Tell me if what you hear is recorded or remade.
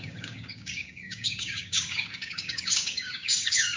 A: remade